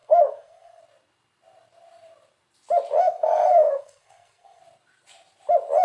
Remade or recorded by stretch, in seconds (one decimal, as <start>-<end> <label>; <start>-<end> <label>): 0.0-0.8 remade; 0.8-3.0 recorded; 3.0-4.6 remade; 4.6-5.8 recorded